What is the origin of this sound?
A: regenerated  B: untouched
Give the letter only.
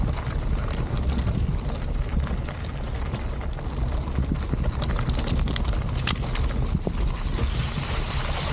B